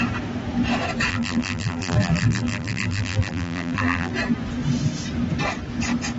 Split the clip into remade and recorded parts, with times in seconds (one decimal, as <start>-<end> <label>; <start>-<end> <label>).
0.0-1.1 recorded; 1.1-4.1 remade; 4.1-6.2 recorded